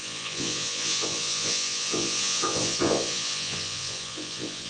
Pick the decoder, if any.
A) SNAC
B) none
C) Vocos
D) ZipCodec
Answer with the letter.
C